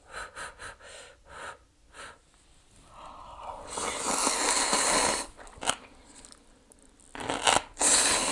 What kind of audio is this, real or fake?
real